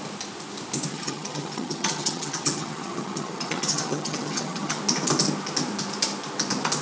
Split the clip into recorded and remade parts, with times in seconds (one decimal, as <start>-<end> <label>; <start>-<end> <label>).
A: 0.0-0.9 recorded; 0.9-4.8 remade; 4.8-6.8 recorded